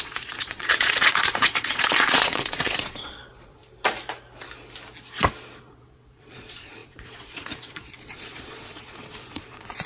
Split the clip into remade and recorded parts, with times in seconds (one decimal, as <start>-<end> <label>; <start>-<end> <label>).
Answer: 0.0-3.6 remade; 3.6-5.6 recorded; 5.6-9.9 remade